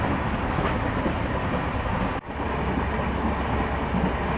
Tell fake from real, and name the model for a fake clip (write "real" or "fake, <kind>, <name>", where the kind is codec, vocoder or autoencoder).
real